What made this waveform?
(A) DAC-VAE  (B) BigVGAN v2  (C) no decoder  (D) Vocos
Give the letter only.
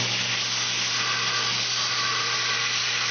C